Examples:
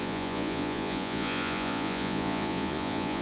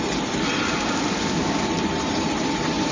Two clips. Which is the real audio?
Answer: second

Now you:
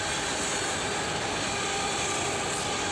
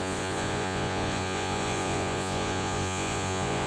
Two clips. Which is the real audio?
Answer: first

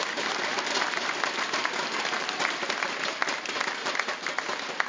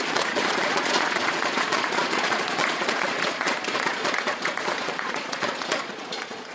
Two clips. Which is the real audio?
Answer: first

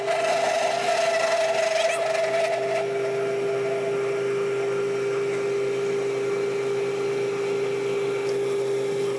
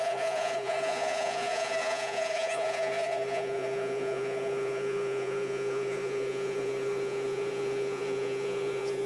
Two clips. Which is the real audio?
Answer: first